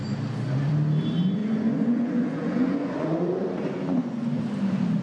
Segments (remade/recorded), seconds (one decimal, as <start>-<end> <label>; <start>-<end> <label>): 0.0-1.4 recorded; 1.4-4.4 remade; 4.4-5.0 recorded